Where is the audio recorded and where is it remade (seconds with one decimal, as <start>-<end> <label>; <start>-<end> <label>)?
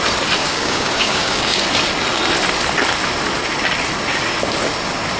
0.0-0.4 recorded; 0.4-1.6 remade; 1.6-5.2 recorded